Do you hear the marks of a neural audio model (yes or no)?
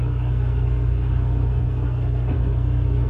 yes